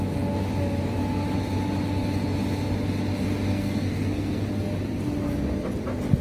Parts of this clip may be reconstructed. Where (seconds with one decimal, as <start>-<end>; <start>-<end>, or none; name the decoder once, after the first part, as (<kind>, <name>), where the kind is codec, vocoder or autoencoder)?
3.5-4.4 (codec, SNAC)

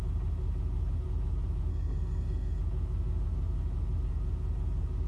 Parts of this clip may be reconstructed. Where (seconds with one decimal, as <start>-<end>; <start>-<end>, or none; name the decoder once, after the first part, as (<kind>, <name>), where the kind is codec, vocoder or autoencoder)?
1.7-2.6 (codec, SNAC)

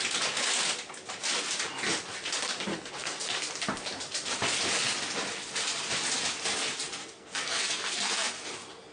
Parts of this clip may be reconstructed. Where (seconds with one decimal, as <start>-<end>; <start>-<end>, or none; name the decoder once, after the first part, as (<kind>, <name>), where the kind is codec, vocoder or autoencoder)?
2.7-3.2 (codec, SNAC); 7.0-8.5

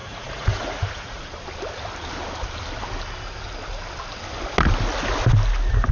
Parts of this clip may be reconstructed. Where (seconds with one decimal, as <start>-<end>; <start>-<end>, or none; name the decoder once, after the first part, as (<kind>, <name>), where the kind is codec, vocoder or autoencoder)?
0.0-1.2 (vocoder, Vocos)

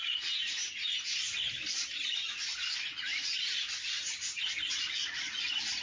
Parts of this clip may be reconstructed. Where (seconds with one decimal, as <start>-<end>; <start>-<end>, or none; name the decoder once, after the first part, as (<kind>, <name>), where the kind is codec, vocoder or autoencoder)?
none

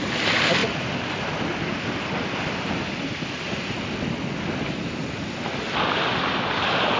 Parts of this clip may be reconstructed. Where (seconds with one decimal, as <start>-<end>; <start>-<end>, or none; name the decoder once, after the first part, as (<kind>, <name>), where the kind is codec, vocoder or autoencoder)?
none